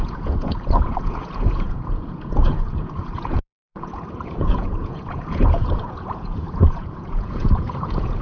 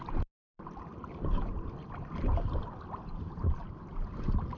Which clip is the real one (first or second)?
second